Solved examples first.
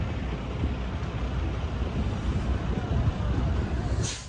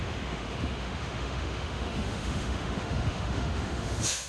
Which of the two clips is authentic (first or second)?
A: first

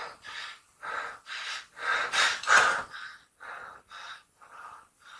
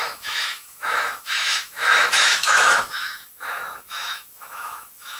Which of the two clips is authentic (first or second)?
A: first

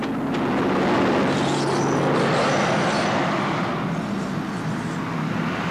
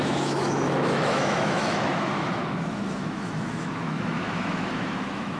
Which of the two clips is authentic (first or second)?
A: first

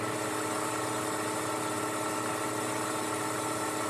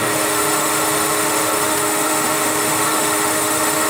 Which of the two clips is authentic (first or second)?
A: first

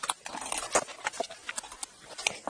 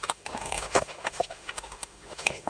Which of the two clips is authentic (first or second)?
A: first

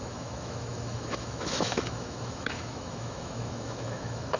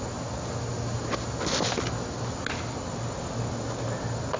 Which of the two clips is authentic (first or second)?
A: second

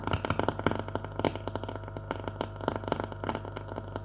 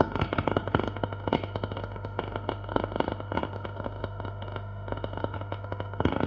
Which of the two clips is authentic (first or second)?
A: first